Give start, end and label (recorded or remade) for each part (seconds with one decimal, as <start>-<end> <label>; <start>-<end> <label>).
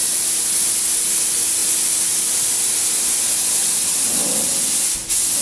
0.0-5.4 recorded